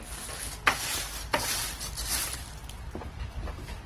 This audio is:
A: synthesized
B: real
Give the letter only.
B